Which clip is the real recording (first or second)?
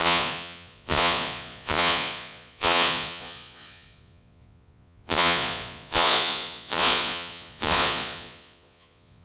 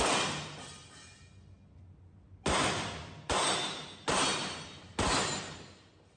second